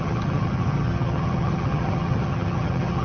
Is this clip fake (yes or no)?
yes